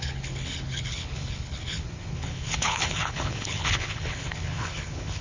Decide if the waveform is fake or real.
fake